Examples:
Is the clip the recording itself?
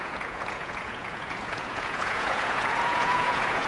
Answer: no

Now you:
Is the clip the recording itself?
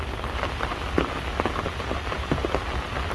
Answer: yes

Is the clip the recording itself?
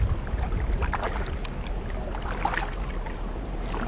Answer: yes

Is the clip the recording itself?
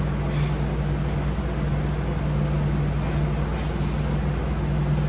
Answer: yes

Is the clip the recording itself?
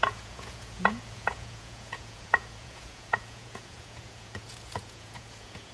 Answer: no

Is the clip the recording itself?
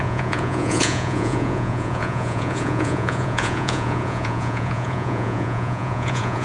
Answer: no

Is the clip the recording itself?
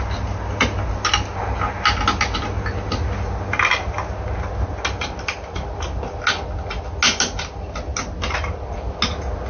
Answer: yes